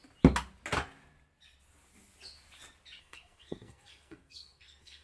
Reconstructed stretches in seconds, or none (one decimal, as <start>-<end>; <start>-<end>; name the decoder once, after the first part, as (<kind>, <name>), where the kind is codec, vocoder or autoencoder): 3.0-5.0 (codec, SNAC)